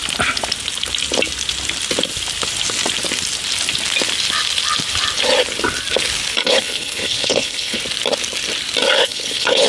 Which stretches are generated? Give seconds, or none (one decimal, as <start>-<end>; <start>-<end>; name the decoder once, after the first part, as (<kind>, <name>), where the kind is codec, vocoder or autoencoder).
6.4-7.8 (codec, HILCodec); 9.0-9.7